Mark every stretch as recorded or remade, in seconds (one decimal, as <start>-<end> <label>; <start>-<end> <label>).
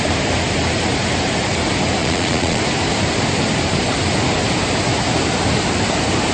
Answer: 0.0-2.0 recorded; 2.0-2.6 remade; 2.6-6.3 recorded